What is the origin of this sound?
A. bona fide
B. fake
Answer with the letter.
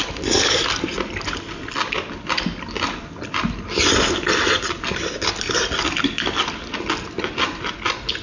A